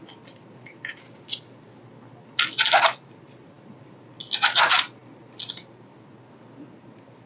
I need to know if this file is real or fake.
real